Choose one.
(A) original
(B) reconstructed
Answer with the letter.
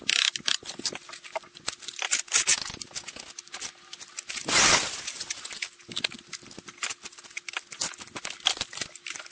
A